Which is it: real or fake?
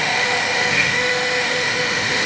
fake